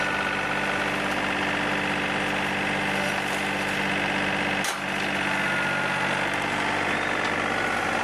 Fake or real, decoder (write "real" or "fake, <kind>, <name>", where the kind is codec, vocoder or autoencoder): real